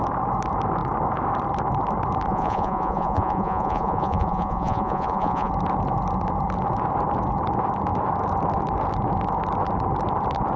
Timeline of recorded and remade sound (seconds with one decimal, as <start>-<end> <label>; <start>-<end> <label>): 0.0-2.3 recorded; 2.3-5.5 remade; 5.5-10.6 recorded